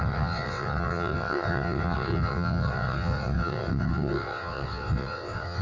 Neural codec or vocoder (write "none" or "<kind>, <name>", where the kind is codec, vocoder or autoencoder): vocoder, WaveNeXt